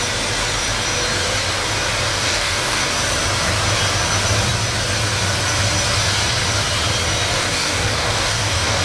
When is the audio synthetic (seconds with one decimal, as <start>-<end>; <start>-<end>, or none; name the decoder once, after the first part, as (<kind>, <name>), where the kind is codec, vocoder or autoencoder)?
2.1-2.9 (codec, DAC); 7.3-8.8